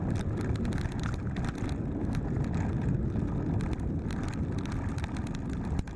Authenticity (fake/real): real